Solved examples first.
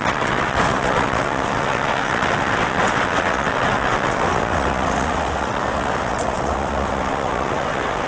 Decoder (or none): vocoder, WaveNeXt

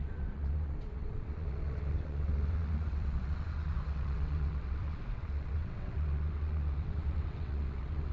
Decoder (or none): vocoder, WaveNeXt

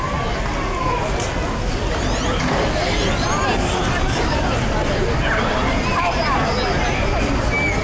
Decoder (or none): none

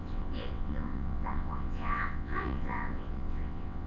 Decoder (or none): vocoder, WaveNeXt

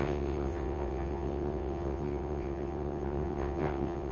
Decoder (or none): vocoder, WaveNeXt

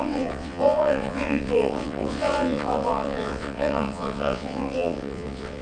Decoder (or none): vocoder, WaveNeXt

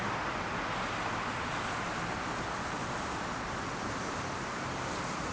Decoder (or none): none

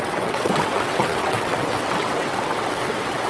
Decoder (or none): vocoder, WaveNeXt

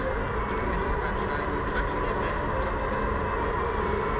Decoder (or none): none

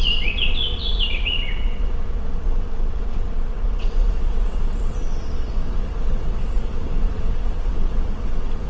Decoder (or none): vocoder, WaveNeXt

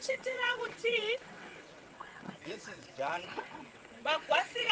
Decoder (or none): vocoder, WaveNeXt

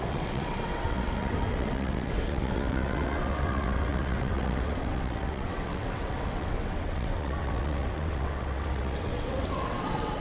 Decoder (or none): vocoder, WaveNeXt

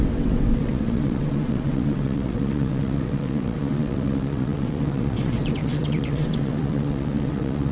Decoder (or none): vocoder, WaveNeXt